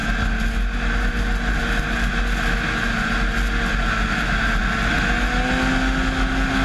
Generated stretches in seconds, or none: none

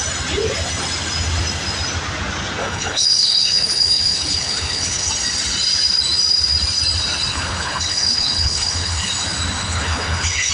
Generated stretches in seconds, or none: 2.6-5.1 (codec, HILCodec); 7.3-9.1; 9.6-10.5

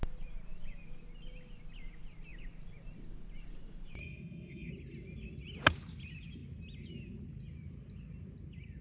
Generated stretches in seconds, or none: 4.0-4.7 (autoencoder, DAC-VAE)

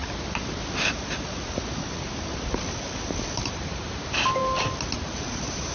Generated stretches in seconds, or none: none

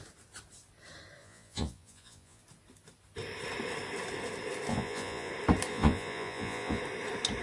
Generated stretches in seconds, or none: 1.2-2.4 (vocoder, Vocos); 4.7-5.3; 5.7-6.8

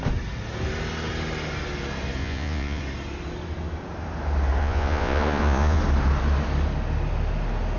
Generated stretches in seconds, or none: 2.2-2.8 (vocoder, Vocos); 4.6-5.8